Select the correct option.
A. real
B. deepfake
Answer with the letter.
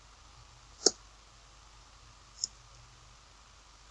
A